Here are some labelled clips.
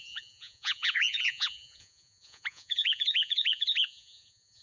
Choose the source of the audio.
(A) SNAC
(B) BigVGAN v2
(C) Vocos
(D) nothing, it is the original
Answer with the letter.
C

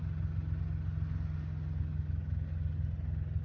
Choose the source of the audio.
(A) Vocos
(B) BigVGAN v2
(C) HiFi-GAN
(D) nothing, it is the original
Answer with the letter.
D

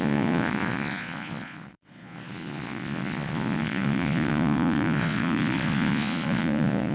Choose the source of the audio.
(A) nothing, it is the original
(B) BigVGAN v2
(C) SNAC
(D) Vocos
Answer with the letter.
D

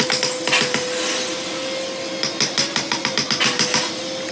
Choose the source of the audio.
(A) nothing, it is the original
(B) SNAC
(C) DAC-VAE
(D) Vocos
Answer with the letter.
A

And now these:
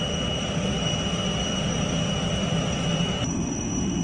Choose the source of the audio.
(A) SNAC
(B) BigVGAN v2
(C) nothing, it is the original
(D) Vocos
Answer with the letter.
C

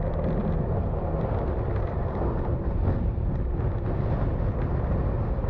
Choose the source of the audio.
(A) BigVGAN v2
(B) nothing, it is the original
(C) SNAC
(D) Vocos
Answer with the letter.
B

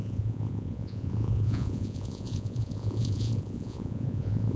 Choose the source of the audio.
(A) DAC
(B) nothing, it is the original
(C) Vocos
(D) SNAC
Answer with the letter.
C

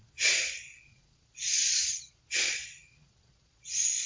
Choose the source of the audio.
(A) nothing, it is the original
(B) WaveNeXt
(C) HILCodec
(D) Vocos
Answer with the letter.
D